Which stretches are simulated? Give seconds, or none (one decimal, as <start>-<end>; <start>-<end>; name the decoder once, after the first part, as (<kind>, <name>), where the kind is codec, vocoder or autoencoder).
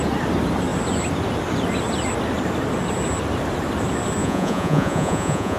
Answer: 4.2-5.6 (vocoder, Vocos)